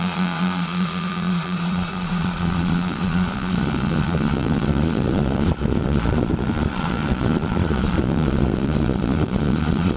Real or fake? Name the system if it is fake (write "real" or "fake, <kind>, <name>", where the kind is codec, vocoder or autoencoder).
fake, vocoder, Vocos